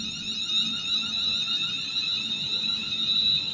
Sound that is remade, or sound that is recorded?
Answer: recorded